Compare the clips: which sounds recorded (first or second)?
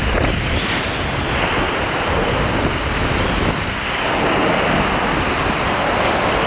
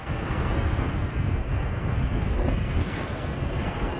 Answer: first